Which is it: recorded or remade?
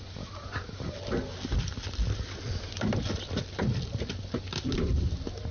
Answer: recorded